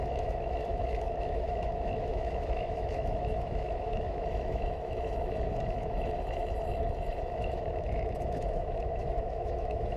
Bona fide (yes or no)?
no